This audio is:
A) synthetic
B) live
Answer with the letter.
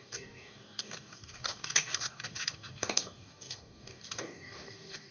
A